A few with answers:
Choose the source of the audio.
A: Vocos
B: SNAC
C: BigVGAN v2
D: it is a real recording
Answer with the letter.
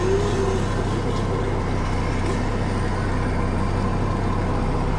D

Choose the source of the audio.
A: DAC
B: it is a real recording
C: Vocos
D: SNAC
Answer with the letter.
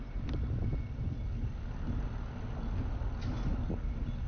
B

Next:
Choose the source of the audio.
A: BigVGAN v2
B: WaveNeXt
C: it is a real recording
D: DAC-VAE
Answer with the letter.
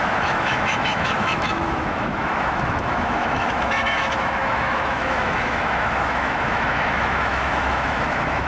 D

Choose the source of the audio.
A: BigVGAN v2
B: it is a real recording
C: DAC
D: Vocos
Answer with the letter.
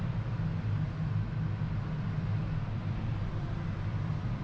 B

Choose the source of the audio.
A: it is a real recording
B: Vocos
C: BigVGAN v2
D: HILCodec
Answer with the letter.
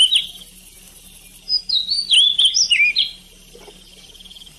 A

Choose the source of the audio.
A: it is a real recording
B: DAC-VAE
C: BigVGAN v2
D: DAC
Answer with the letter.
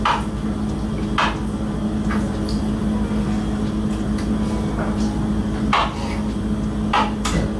A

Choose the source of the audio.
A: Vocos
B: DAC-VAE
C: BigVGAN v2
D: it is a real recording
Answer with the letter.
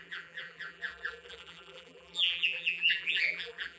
C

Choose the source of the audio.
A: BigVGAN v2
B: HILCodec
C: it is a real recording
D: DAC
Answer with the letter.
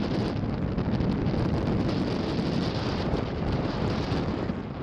C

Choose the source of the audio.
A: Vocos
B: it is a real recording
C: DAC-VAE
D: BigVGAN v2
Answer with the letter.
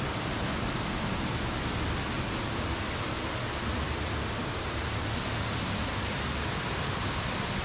B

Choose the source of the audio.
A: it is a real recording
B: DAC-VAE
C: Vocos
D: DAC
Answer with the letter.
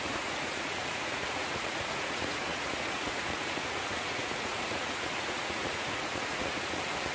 C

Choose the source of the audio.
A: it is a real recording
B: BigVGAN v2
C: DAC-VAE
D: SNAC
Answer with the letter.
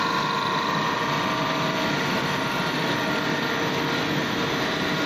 A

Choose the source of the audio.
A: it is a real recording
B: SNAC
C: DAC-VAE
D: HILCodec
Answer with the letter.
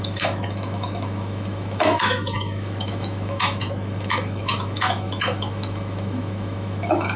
C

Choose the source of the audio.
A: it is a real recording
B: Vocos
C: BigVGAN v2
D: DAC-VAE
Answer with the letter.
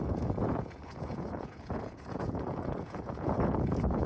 B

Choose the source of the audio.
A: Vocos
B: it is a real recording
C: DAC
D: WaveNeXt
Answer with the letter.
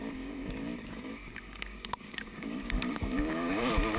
C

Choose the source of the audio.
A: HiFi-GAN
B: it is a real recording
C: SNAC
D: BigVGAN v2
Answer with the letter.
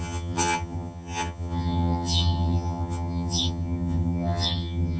A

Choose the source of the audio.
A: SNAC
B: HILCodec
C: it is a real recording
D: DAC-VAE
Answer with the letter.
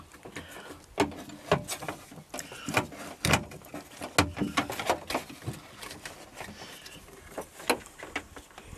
C